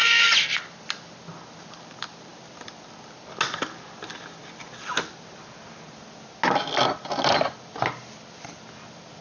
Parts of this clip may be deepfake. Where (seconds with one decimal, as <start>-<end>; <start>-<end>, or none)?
0.0-2.3; 6.6-9.2